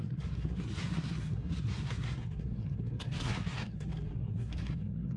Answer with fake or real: fake